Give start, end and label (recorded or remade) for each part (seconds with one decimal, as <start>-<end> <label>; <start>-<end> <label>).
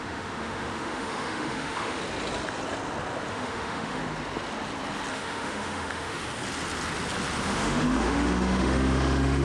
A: 0.0-2.0 remade; 2.0-3.3 recorded; 3.3-4.0 remade; 4.0-5.1 recorded; 5.1-6.2 remade; 6.2-7.4 recorded; 7.4-9.4 remade